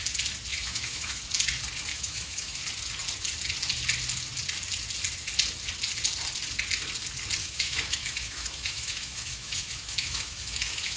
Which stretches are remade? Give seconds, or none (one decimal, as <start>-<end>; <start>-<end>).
0.5-1.2; 1.9-2.6; 7.4-11.0